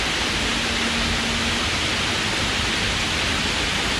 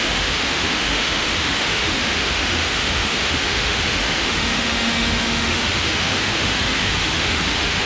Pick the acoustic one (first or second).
first